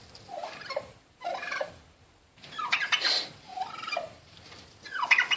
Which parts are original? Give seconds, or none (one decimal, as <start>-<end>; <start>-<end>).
0.0-0.4; 2.0-3.5; 4.4-5.4